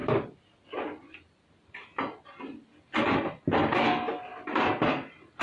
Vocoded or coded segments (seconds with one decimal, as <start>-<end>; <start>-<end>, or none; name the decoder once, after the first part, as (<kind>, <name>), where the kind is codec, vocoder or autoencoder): none

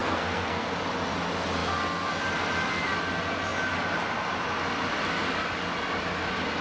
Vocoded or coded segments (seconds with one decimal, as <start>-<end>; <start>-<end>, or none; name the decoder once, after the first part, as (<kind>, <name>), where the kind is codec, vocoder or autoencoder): 0.0-0.7 (codec, SNAC)